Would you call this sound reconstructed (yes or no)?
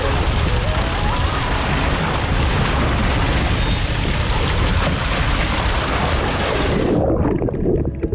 no